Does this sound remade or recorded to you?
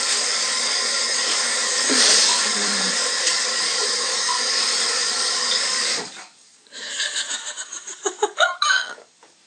remade